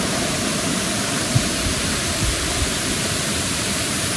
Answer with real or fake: fake